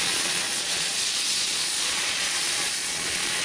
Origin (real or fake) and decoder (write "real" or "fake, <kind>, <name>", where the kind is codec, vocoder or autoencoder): fake, vocoder, Vocos